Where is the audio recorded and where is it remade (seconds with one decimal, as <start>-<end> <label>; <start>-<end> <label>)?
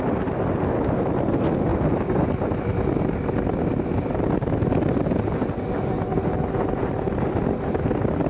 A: 0.0-8.3 recorded